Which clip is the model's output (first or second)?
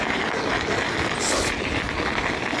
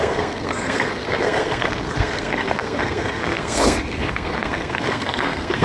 second